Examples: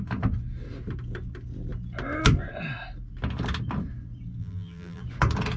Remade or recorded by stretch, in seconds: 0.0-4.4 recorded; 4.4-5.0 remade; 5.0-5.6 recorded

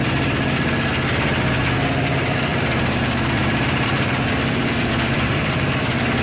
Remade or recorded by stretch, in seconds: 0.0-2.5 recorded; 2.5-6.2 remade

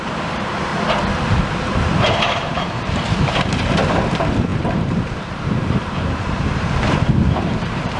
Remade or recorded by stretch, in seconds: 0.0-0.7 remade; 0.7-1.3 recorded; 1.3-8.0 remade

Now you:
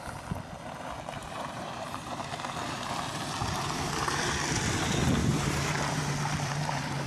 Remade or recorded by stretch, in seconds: 0.0-1.2 recorded; 1.2-2.8 remade; 2.8-5.2 recorded; 5.2-7.1 remade